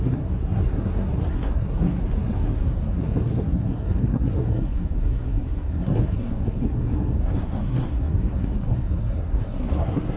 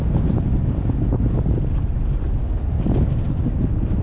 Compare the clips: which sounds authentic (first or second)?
second